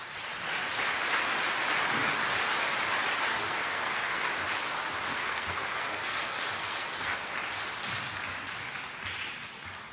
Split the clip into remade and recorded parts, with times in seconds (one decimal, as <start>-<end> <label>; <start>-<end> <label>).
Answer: 0.0-3.3 recorded; 3.3-4.3 remade; 4.3-5.1 recorded; 5.1-7.3 remade; 7.3-9.9 recorded